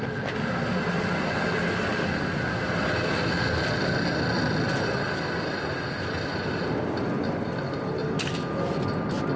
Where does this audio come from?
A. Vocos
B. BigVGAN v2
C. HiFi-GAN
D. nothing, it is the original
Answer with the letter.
D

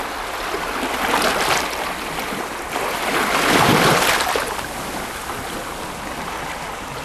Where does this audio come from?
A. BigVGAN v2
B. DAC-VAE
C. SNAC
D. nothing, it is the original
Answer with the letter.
D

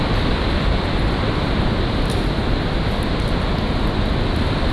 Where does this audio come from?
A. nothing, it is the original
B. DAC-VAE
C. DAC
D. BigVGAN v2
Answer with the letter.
D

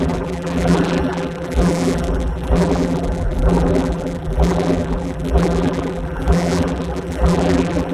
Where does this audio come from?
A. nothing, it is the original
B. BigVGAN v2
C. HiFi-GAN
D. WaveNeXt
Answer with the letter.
B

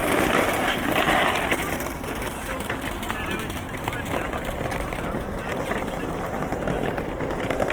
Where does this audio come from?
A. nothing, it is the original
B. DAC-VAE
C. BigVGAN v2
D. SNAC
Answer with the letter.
A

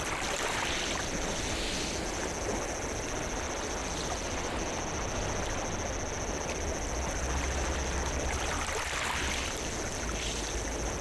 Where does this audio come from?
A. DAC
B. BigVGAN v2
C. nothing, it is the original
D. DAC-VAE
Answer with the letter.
C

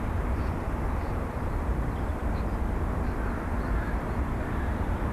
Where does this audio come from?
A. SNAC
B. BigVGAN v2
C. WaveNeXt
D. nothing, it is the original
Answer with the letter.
B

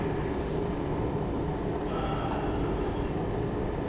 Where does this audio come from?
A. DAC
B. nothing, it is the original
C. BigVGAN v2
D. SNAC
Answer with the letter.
B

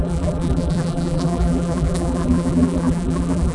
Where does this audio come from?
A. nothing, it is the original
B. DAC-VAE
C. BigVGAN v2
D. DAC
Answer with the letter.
C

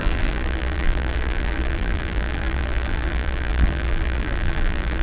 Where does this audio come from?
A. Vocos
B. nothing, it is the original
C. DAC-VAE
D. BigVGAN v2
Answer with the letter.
D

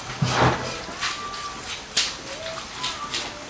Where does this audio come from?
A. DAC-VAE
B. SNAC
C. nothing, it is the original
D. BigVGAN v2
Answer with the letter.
C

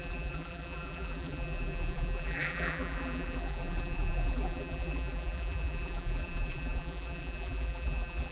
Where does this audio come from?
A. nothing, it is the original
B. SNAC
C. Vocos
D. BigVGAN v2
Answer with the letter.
D